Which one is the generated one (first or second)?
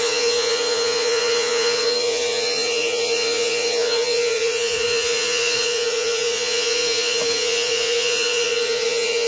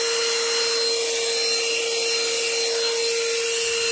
first